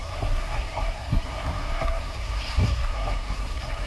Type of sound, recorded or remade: remade